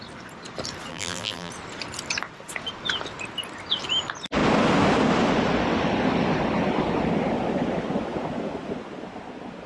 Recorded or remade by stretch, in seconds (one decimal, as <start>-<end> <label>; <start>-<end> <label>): 0.0-0.9 recorded; 0.9-1.5 remade; 1.5-9.7 recorded